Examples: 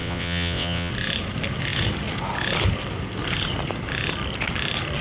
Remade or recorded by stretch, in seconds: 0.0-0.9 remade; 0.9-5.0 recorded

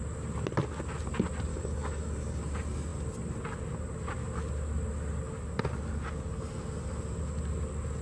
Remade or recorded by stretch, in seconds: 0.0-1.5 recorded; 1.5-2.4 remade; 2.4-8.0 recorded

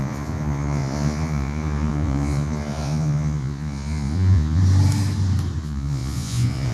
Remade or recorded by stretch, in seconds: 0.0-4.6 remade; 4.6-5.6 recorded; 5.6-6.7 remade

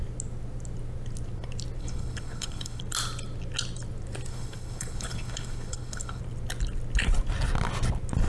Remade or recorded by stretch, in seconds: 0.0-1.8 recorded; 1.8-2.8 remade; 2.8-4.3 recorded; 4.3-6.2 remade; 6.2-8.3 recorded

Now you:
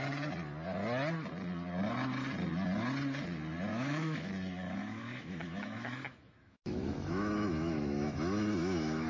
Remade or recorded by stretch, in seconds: 0.0-3.7 recorded; 3.7-4.3 remade; 4.3-4.8 recorded; 4.8-9.1 remade

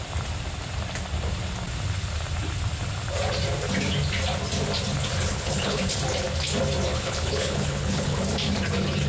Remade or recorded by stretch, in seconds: 0.0-5.3 recorded; 5.3-5.8 remade; 5.8-6.9 recorded; 6.9-8.2 remade; 8.2-9.1 recorded

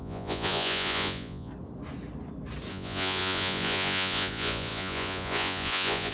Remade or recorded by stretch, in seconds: 0.0-1.5 remade; 1.5-2.7 recorded; 2.7-6.1 remade